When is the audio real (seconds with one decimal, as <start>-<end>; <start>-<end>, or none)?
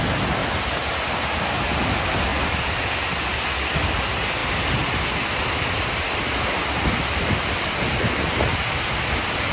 0.0-0.4; 1.4-9.5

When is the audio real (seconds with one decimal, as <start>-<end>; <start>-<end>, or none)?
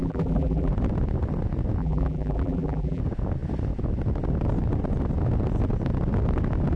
0.7-1.8; 3.0-6.8